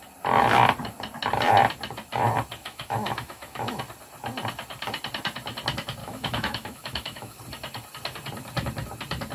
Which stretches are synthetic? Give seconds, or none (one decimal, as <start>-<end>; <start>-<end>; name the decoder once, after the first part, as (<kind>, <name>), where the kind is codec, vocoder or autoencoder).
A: 2.6-3.8 (autoencoder, DAC-VAE); 6.0-7.4